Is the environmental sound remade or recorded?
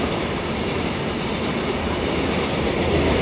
recorded